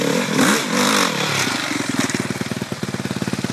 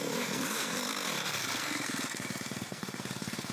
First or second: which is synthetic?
second